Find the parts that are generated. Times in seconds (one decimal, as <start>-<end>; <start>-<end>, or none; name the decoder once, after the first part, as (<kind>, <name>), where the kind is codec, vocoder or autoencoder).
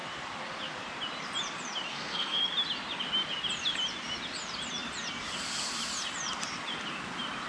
1.9-2.4 (codec, SNAC)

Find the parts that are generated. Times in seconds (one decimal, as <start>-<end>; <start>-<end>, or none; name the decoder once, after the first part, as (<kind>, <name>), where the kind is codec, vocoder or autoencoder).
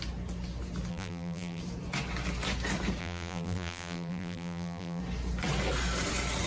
0.9-1.6 (vocoder, BigVGAN v2); 3.0-5.0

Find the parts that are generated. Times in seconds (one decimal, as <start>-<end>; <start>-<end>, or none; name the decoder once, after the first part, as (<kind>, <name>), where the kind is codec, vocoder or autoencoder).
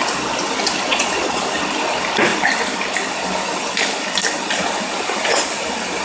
0.9-1.4 (vocoder, Vocos)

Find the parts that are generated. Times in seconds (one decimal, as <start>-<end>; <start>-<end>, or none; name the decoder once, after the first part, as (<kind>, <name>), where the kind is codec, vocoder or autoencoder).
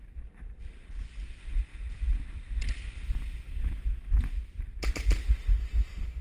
5.6-6.2 (autoencoder, DAC-VAE)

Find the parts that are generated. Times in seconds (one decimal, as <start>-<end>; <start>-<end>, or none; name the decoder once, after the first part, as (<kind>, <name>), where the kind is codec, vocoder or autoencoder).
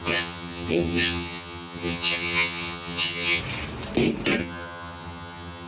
0.0-3.4 (vocoder, HiFi-GAN); 4.4-5.7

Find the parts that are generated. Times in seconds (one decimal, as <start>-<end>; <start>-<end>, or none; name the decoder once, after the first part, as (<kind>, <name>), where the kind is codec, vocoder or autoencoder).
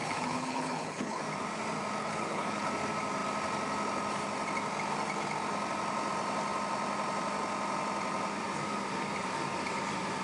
0.0-1.2 (codec, HILCodec); 2.0-2.7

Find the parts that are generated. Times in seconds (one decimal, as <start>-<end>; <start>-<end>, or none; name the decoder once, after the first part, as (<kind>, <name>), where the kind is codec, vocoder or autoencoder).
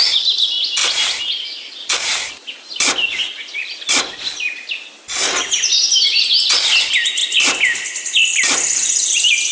none